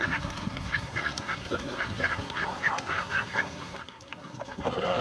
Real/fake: fake